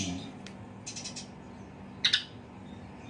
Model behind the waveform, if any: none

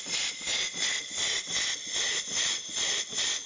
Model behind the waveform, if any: none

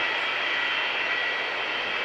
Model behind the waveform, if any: none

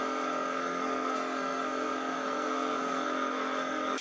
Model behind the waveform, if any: codec, SNAC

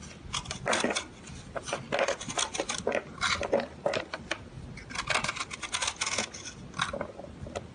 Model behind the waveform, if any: none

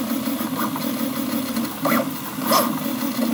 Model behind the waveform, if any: none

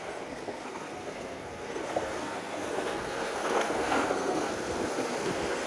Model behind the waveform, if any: codec, SNAC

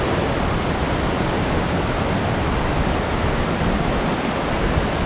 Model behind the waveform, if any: none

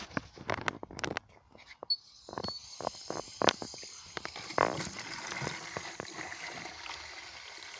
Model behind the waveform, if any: none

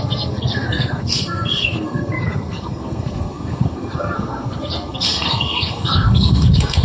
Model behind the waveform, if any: codec, SNAC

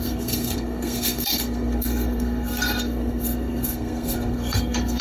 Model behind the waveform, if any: codec, SNAC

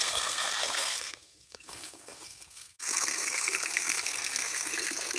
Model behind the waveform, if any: codec, SNAC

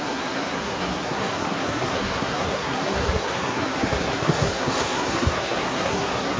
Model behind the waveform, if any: codec, SNAC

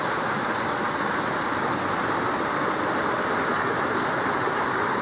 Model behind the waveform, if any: none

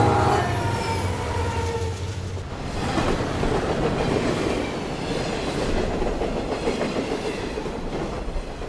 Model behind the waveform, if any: none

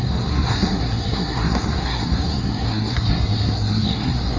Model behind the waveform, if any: codec, SNAC